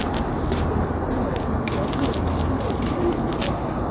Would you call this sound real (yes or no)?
yes